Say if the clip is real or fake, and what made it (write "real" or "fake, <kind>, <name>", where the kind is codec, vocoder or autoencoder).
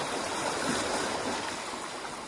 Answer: real